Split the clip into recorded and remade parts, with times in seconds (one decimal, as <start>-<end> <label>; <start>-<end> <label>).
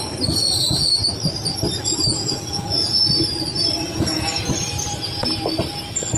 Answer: 0.0-2.1 recorded; 2.1-3.0 remade; 3.0-3.9 recorded; 3.9-4.5 remade; 4.5-6.2 recorded